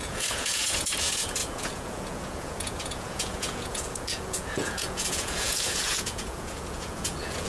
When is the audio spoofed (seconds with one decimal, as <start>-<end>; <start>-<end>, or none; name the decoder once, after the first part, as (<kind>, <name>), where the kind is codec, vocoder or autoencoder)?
0.0-7.5 (vocoder, Vocos)